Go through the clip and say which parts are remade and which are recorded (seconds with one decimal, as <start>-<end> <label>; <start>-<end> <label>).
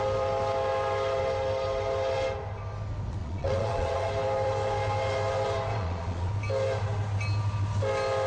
0.0-3.2 recorded; 3.2-4.1 remade; 4.1-5.7 recorded; 5.7-6.3 remade; 6.3-8.3 recorded